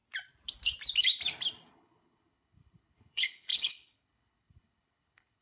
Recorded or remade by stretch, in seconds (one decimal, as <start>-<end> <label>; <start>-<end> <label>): 0.0-1.7 recorded; 1.7-5.4 remade